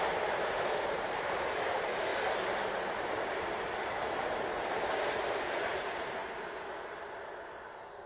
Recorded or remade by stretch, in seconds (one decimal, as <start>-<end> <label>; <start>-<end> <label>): 0.0-2.1 remade; 2.1-4.6 recorded; 4.6-6.2 remade; 6.2-8.1 recorded